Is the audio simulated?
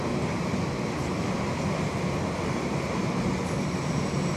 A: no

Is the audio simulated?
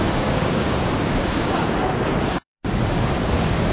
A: yes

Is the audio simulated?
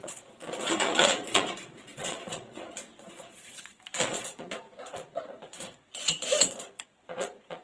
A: yes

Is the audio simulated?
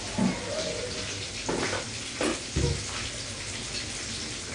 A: no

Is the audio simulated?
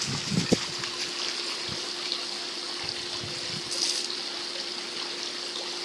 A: no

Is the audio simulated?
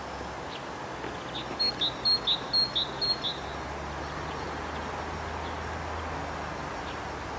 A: no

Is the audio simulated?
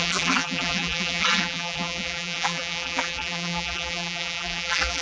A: yes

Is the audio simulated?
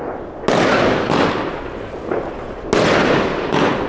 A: no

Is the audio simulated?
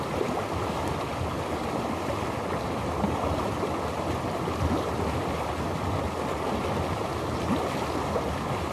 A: no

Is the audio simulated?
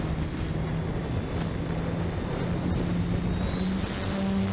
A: no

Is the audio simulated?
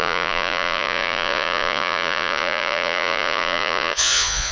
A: yes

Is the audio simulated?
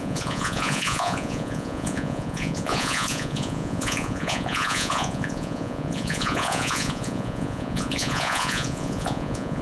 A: yes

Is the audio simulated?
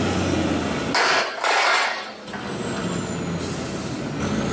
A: no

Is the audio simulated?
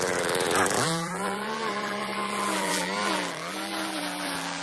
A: yes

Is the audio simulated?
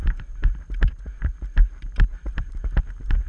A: yes